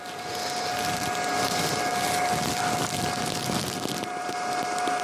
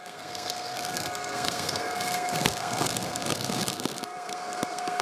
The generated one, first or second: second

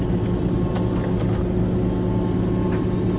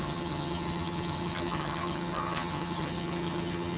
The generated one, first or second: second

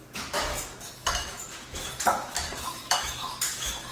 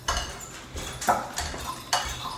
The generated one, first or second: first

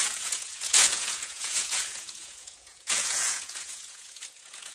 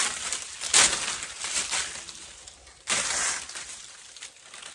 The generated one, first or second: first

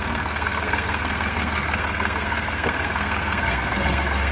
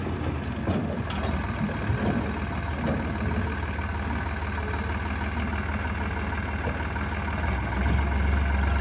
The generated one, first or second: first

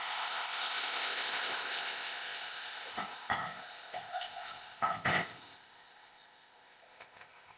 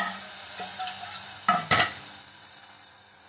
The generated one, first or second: first